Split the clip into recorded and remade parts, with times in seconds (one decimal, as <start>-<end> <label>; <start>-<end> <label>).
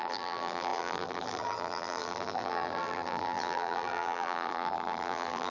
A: 0.0-5.5 remade